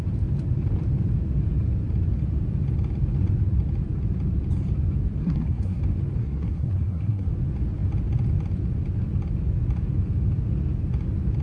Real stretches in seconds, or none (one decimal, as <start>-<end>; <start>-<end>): 0.0-5.2; 5.8-6.2; 7.3-11.4